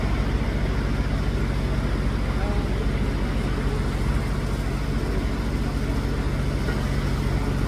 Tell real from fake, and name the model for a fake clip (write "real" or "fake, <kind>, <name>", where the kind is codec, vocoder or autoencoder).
real